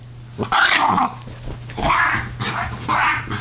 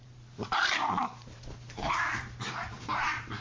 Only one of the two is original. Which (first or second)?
first